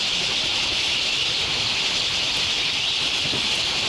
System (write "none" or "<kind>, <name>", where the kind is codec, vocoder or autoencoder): none